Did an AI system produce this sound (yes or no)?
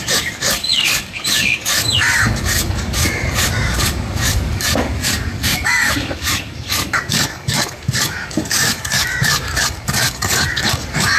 yes